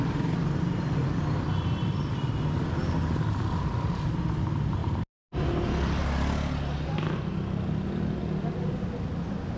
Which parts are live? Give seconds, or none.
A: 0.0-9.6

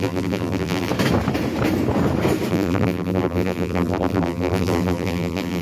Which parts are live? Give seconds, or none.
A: 0.9-2.5

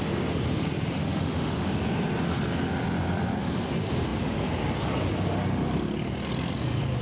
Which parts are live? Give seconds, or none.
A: 0.0-1.0; 1.7-7.0

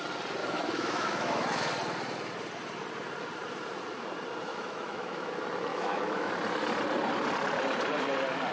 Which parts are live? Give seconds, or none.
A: 0.0-0.4; 1.7-4.5; 5.3-5.7; 6.3-8.5

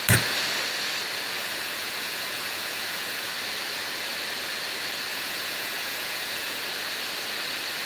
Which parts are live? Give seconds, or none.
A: 0.0-1.4; 3.3-5.1; 6.6-7.9

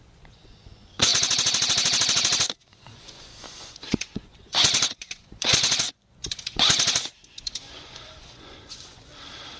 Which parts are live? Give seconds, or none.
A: 9.1-9.6

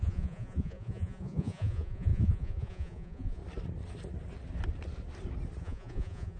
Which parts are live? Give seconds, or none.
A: 3.4-5.6